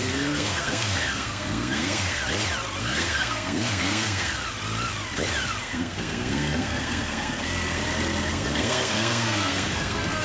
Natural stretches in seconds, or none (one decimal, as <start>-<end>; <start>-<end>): 2.2-2.8; 4.4-5.6; 7.8-8.3

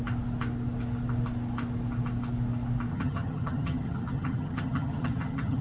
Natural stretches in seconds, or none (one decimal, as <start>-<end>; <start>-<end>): 0.0-2.9

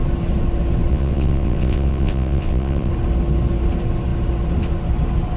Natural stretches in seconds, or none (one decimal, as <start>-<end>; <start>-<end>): 0.0-0.9; 2.9-5.4